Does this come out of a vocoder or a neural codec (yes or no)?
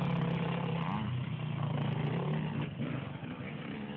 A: no